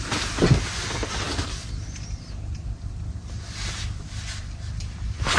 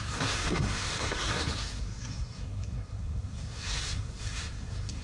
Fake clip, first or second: second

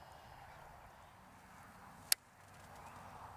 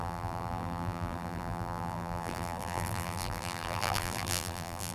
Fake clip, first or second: second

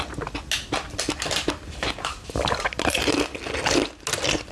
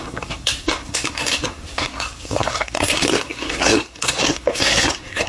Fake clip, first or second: second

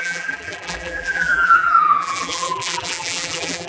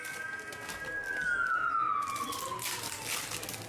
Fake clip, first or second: first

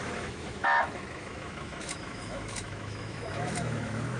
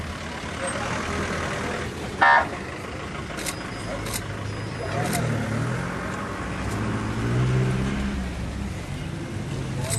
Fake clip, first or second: first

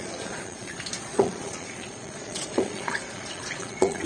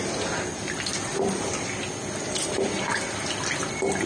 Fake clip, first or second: first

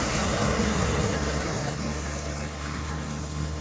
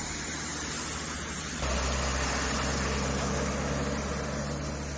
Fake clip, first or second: first